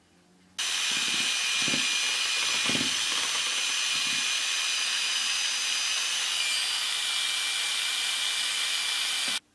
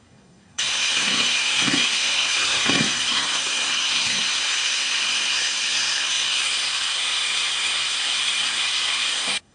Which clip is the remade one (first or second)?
second